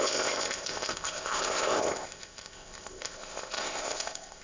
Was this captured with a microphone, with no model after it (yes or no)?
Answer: no